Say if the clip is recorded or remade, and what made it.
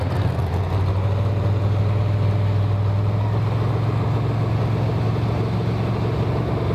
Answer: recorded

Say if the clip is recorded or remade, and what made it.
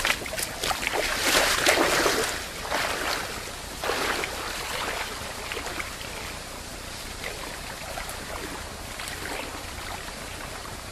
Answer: recorded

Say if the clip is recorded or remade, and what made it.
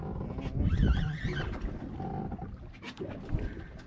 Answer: recorded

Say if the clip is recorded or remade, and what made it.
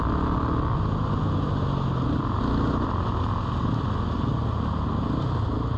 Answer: recorded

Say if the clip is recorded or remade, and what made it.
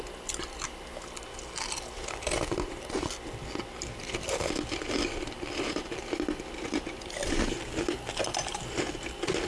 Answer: recorded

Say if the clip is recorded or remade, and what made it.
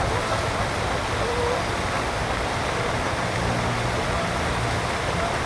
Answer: recorded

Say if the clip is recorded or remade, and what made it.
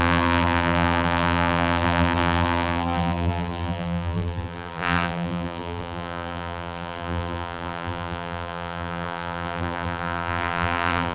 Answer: remade, vocoder, BigVGAN v2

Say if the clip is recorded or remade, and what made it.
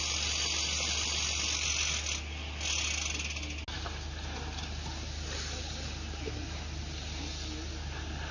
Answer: recorded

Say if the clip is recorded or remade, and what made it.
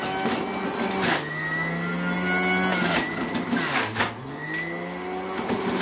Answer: recorded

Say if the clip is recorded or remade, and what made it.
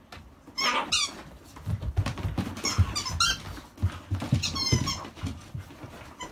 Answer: recorded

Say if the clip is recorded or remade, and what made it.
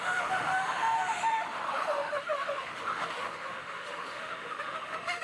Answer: remade, autoencoder, DAC-VAE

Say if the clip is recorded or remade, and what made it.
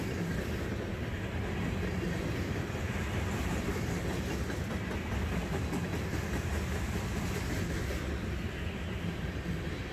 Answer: recorded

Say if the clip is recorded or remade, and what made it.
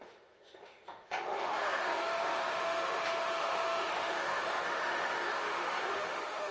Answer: remade, autoencoder, DAC-VAE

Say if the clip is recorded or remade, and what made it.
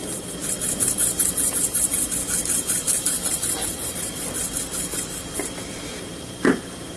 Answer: remade, vocoder, BigVGAN v2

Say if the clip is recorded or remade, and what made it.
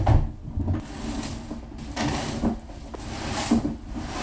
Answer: recorded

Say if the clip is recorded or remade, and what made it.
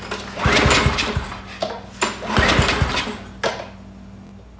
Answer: recorded